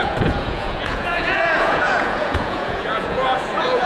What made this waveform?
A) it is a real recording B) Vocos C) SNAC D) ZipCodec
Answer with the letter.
B